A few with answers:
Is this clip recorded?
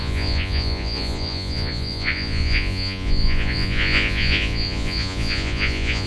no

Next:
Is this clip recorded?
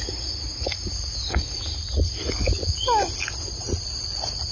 yes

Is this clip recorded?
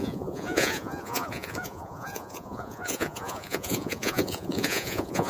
no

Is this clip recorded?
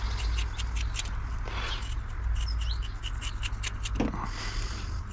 yes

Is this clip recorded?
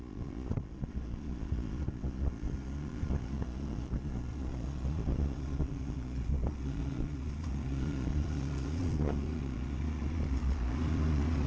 no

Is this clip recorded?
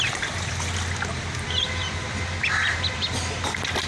yes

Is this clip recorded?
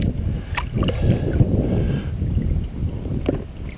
yes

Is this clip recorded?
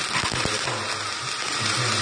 yes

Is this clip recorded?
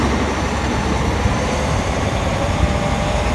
yes